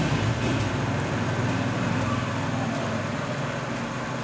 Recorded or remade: recorded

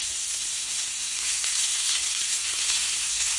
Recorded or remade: remade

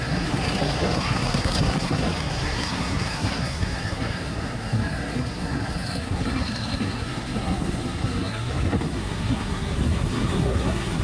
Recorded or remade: remade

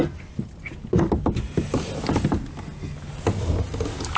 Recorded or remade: recorded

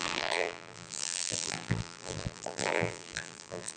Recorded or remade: remade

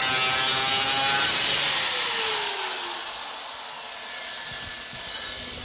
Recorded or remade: recorded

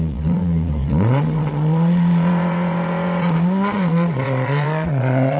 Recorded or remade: remade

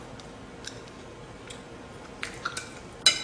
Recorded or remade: recorded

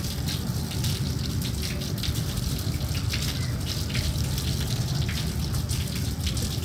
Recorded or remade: recorded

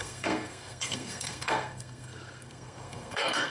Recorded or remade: remade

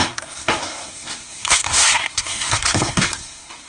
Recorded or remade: remade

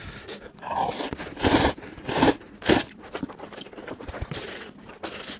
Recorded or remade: remade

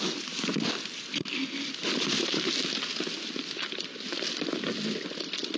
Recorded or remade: recorded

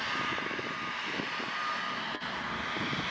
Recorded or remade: recorded